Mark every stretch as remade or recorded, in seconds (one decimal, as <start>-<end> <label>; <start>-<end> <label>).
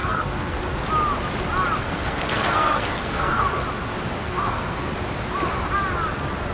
0.0-0.6 remade; 0.6-1.8 recorded; 1.8-3.5 remade; 3.5-4.2 recorded; 4.2-4.8 remade; 4.8-6.5 recorded